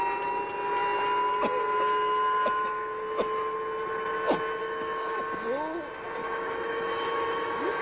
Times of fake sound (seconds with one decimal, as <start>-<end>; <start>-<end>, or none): 4.6-5.2; 6.2-7.8